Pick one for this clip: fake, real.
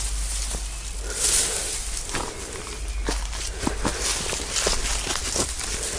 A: real